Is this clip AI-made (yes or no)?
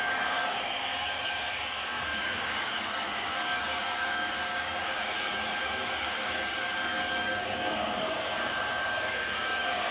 yes